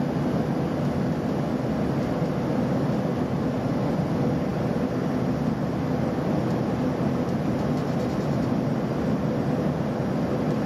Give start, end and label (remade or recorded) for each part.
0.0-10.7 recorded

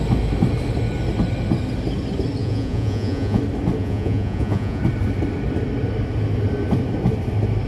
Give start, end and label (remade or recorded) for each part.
0.0-2.4 recorded; 2.4-3.4 remade; 3.4-3.8 recorded; 3.8-4.8 remade; 4.8-7.7 recorded